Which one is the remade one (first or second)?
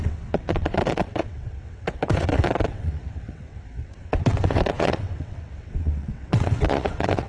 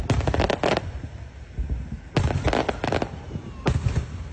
first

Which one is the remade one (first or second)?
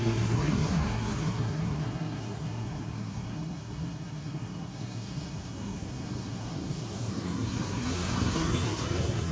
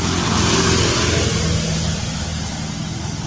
first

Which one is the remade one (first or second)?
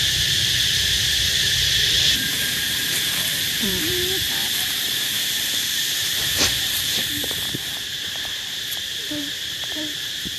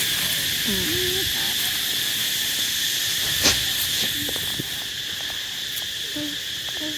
first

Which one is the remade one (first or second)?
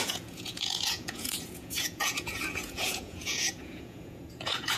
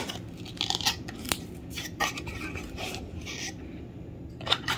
first